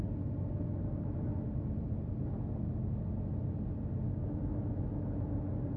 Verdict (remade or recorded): recorded